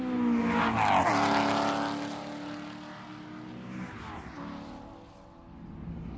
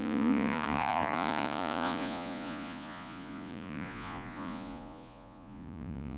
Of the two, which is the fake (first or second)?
second